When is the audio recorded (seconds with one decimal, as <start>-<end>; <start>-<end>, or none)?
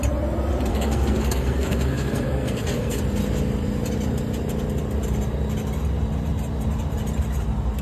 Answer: 0.0-0.7; 3.0-7.8